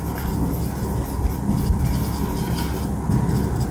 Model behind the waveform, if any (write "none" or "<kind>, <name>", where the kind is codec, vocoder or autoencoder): none